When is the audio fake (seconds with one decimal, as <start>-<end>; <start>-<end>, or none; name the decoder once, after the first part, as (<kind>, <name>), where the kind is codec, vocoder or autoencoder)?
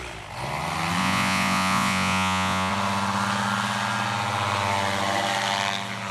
1.0-2.7 (vocoder, Vocos)